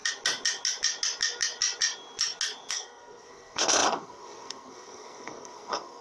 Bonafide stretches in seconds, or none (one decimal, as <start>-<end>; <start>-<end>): 0.0-2.7